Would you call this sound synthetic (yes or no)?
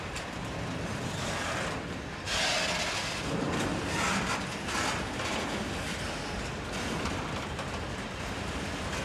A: no